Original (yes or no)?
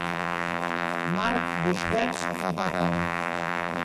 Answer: no